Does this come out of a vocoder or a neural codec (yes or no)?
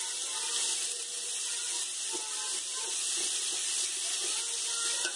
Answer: no